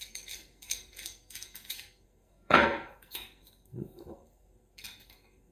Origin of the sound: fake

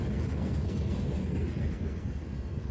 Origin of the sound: fake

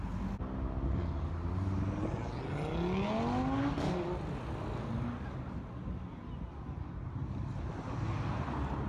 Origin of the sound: real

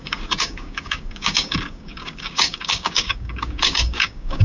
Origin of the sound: fake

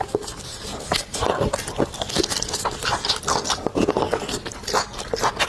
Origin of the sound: real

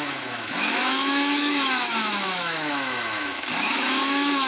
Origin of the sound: fake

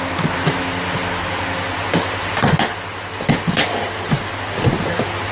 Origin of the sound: real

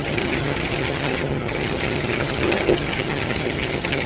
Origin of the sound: fake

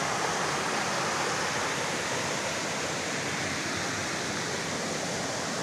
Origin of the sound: real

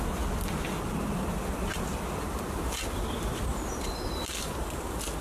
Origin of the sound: real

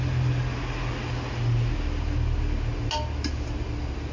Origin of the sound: real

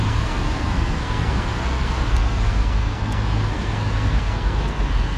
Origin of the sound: fake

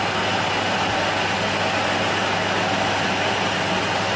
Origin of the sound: real